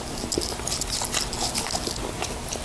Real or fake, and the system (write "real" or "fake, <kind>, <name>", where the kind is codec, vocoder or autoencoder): real